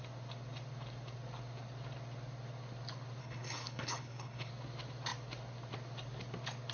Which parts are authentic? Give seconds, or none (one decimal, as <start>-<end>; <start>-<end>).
0.0-3.2; 4.5-6.7